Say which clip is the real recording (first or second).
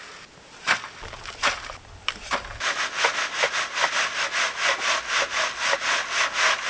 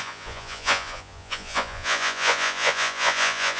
first